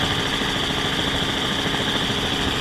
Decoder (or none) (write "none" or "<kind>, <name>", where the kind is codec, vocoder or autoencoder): none